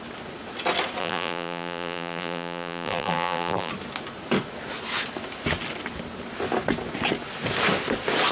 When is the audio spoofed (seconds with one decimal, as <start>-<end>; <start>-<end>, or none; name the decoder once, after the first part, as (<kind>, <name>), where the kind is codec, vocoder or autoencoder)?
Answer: 1.0-3.7 (vocoder, BigVGAN v2)